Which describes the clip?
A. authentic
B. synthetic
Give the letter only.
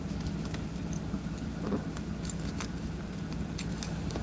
A